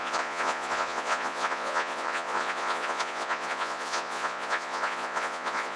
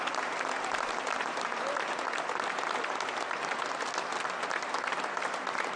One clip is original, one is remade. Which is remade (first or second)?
first